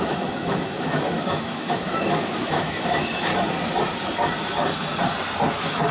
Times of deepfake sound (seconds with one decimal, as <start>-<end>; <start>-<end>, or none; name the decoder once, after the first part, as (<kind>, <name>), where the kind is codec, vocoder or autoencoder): 0.0-3.3 (autoencoder, DAC-VAE); 5.5-5.9